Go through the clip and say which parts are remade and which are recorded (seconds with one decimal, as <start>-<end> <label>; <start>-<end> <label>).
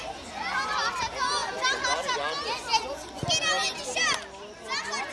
0.0-5.1 recorded